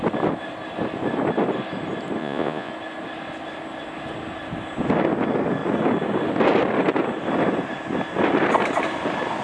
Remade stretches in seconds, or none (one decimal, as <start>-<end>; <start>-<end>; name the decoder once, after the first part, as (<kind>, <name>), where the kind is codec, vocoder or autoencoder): 2.2-2.7 (vocoder, Vocos)